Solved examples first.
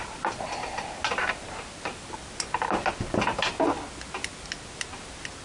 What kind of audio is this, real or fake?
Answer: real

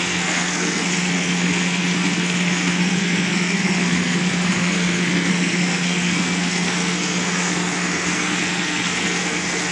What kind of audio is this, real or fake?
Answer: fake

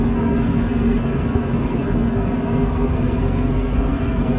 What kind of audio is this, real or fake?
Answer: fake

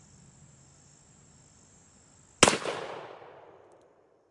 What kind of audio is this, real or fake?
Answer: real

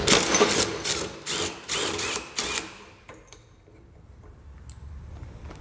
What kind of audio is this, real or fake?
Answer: real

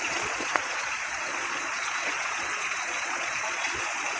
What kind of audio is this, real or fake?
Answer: fake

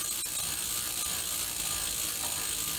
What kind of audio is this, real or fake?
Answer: real